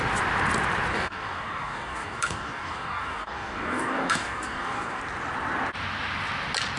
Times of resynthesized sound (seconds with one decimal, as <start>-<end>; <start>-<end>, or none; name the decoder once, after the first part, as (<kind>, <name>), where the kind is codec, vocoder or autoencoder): 0.9-5.0 (codec, DAC)